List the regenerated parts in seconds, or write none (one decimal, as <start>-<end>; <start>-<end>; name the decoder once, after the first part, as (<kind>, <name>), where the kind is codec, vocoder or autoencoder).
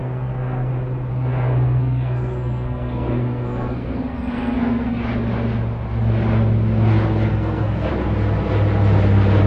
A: 0.0-0.7 (codec, SNAC); 1.1-5.0; 7.3-7.9